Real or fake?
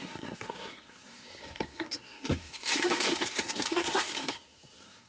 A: fake